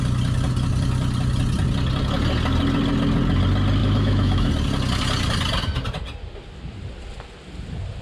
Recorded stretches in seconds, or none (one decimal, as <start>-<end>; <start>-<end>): 0.0-3.8; 4.5-8.0